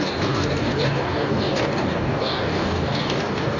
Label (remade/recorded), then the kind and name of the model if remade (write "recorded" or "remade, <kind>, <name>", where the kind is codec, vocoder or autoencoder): remade, codec, DAC